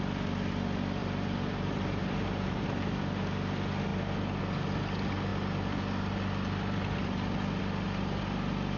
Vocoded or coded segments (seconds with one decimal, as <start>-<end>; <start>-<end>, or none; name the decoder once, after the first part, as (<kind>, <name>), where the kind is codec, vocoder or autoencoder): 1.0-3.0 (vocoder, BigVGAN v2)